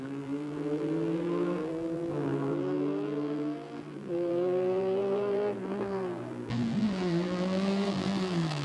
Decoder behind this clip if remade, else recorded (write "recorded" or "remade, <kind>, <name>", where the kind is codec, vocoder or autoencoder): remade, vocoder, BigVGAN v2